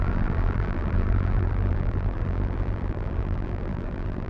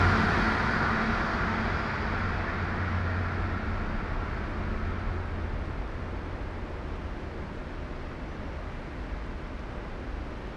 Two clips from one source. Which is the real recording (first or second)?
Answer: second